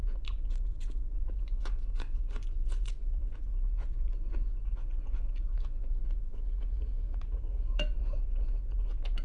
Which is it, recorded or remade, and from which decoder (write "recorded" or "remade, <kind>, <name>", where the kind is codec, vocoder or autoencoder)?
remade, vocoder, Vocos